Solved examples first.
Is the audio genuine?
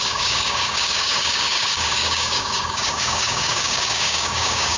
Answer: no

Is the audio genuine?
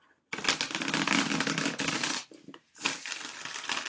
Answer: yes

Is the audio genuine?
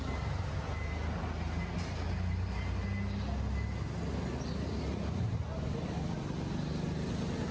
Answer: yes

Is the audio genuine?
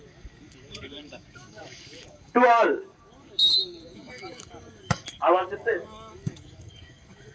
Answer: no